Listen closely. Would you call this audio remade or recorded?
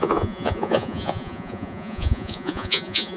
remade